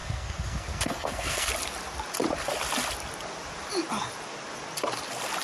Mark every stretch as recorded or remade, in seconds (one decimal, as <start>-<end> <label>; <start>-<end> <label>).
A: 0.0-1.5 remade; 1.5-5.4 recorded